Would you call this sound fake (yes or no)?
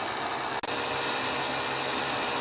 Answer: no